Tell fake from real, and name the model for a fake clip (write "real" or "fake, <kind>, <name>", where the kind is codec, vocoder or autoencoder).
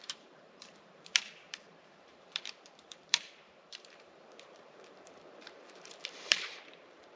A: fake, vocoder, BigVGAN v2